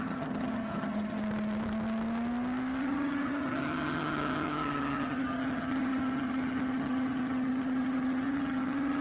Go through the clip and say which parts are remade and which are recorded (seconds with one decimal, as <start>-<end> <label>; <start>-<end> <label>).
0.0-1.2 remade; 1.2-2.8 recorded; 2.8-9.0 remade